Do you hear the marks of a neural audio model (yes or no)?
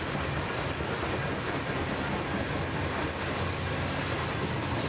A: no